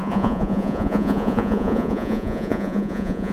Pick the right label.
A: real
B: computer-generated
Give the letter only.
B